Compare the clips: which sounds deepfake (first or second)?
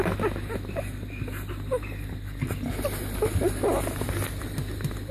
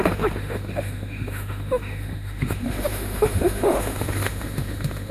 second